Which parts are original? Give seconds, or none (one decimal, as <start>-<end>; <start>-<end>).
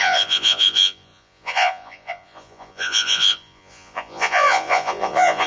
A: none